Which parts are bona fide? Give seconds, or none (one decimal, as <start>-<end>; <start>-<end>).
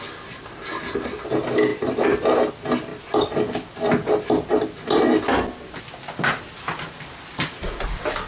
0.0-8.3